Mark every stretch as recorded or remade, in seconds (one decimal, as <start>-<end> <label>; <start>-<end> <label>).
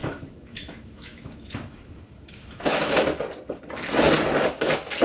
0.0-3.0 remade; 3.0-5.0 recorded